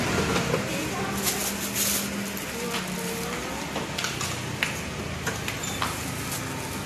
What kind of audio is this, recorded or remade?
recorded